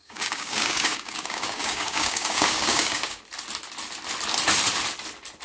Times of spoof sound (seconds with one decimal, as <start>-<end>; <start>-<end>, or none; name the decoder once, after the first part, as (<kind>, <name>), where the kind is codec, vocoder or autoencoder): 0.0-3.2 (codec, DAC)